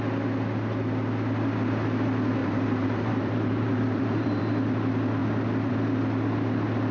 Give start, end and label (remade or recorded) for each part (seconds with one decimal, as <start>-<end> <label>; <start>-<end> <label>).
0.0-2.4 recorded; 2.4-4.4 remade; 4.4-6.9 recorded